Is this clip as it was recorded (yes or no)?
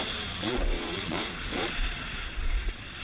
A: no